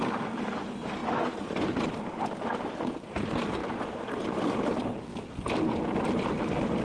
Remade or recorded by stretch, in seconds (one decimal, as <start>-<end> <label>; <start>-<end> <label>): 0.0-6.8 recorded